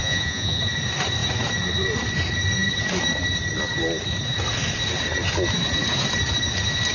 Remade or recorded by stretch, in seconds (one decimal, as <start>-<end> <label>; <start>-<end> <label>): 0.0-0.6 remade; 0.6-6.9 recorded